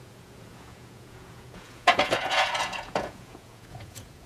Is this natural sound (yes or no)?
no